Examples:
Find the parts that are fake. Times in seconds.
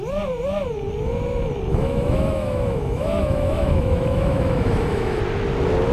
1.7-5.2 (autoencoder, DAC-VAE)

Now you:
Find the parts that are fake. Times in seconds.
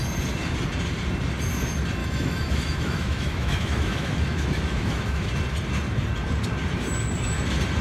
2.0-5.3 (autoencoder, DAC-VAE)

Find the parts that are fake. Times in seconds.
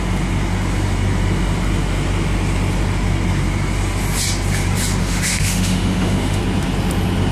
5.0-6.4 (autoencoder, DAC-VAE)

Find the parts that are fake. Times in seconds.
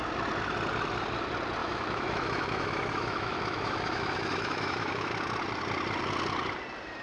1.6-5.1 (autoencoder, DAC-VAE)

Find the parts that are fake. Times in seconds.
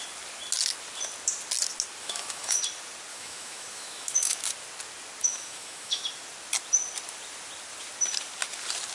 2.0-2.6 (autoencoder, DAC-VAE); 3.1-4.4; 5.2-6.0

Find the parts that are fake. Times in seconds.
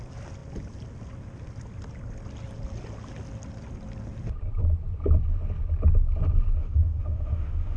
6.6-7.8 (autoencoder, DAC-VAE)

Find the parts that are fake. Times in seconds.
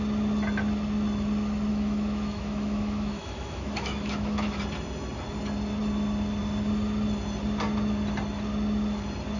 1.7-4.6 (autoencoder, DAC-VAE)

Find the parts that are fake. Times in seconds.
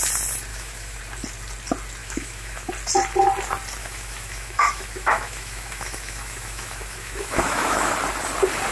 0.5-1.0 (autoencoder, DAC-VAE); 2.0-2.7; 3.8-7.9